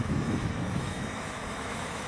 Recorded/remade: remade